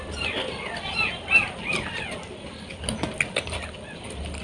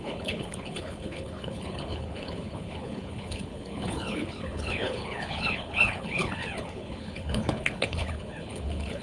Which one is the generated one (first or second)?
second